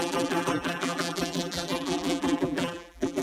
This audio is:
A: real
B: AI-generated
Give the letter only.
B